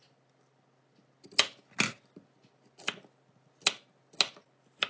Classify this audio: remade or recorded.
recorded